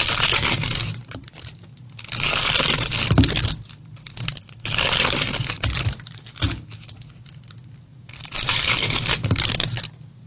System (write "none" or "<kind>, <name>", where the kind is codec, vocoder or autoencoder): none